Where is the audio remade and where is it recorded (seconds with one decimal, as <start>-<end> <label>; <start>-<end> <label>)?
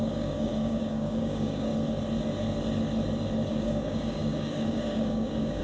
0.0-1.7 remade; 1.7-3.5 recorded; 3.5-5.6 remade